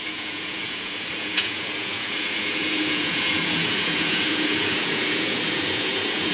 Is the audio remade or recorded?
remade